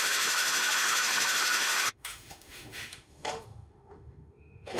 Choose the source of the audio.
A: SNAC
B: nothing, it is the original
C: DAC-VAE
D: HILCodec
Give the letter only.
C